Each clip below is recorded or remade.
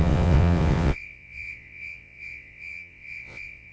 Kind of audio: remade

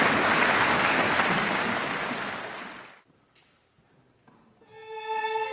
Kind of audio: recorded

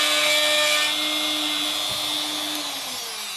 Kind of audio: recorded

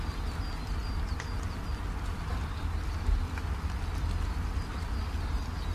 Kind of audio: recorded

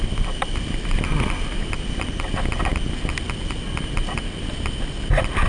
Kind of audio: recorded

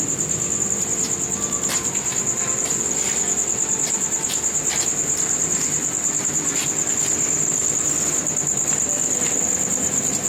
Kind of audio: recorded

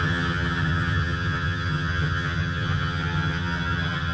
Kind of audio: remade